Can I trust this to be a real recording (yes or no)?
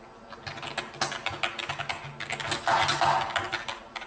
yes